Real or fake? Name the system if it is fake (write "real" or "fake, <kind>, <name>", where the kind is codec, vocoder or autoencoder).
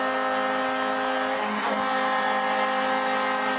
real